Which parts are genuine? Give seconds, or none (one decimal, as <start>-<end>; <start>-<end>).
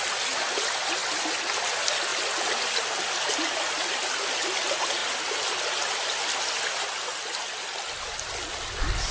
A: 0.0-1.0; 1.7-2.1; 3.8-5.0; 5.6-9.1